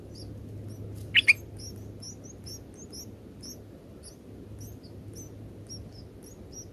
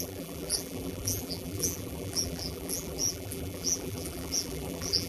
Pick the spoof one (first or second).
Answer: second